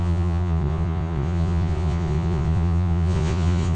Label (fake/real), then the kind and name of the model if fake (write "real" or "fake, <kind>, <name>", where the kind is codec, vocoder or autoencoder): fake, vocoder, Vocos